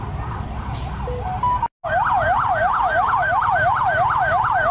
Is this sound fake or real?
real